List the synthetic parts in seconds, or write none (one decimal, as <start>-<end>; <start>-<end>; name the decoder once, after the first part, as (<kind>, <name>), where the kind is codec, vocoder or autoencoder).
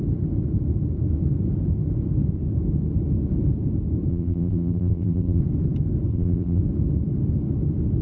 4.1-5.4 (vocoder, BigVGAN v2); 6.1-6.6